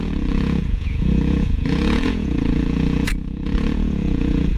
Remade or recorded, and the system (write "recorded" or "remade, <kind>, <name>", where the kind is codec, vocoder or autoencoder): remade, vocoder, Vocos